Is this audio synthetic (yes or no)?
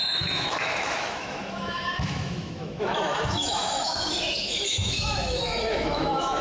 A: yes